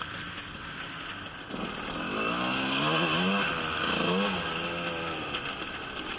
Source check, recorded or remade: recorded